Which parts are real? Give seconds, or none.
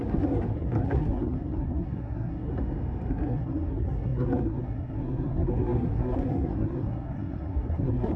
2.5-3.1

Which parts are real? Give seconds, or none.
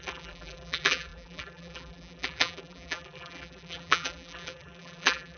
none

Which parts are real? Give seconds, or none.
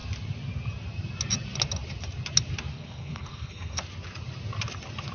0.0-2.7; 3.8-5.1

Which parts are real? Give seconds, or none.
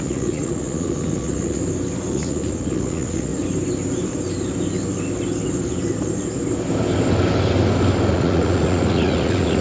1.6-2.1; 3.3-8.1